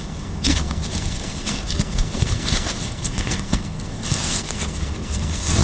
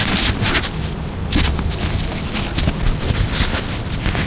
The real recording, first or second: second